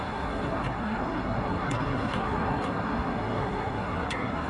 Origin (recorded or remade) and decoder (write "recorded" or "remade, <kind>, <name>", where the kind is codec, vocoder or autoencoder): remade, codec, SNAC